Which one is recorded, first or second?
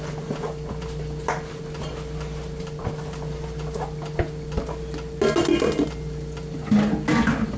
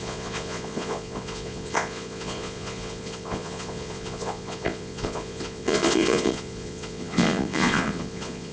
first